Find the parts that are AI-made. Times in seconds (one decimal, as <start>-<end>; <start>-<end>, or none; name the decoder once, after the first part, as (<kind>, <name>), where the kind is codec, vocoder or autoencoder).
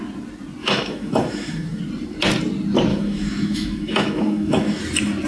0.6-1.8 (autoencoder, DAC-VAE); 2.9-4.8